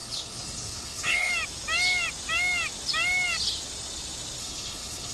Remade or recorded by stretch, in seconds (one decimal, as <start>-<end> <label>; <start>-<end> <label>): 0.0-1.3 remade; 1.3-4.4 recorded; 4.4-5.1 remade